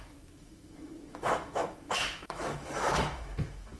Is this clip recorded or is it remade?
remade